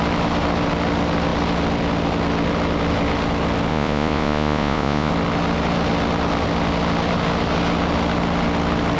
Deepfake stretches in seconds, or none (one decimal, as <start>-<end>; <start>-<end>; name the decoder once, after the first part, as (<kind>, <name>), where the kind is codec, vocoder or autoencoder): 3.7-5.1 (vocoder, Vocos)